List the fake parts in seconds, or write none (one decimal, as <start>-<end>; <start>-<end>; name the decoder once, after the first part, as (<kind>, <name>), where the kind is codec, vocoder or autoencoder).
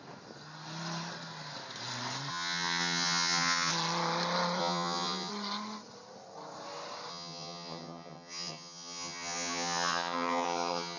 2.3-3.7 (vocoder, HiFi-GAN); 4.6-5.3; 7.1-11.0